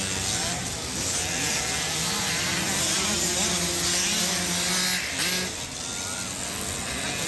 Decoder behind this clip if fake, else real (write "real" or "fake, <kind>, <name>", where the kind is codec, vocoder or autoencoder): real